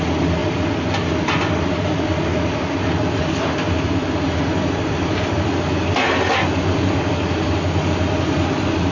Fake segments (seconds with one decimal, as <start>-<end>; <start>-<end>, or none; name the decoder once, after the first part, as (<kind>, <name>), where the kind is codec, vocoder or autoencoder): none